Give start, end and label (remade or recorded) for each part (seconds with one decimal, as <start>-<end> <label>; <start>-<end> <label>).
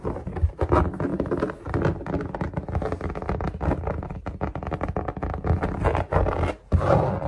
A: 0.0-7.3 recorded